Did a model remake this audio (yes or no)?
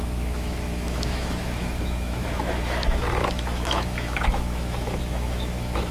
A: yes